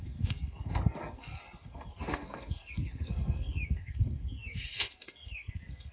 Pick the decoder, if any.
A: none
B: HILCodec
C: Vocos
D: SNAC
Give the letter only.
D